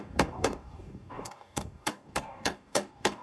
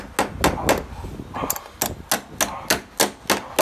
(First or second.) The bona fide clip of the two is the second